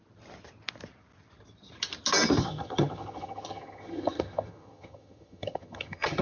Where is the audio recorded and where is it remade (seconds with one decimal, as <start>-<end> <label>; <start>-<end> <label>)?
0.0-2.4 recorded; 2.4-6.2 remade